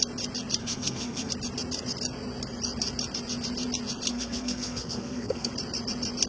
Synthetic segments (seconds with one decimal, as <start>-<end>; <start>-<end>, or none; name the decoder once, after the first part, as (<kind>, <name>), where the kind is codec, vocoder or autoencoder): 0.6-1.3 (codec, SNAC); 4.1-5.5